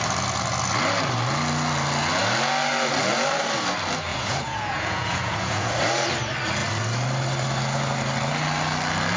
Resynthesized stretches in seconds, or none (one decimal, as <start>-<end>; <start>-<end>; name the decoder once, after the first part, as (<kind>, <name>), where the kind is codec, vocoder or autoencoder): 4.1-5.7 (vocoder, Vocos)